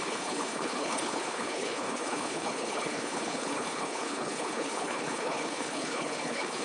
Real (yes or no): no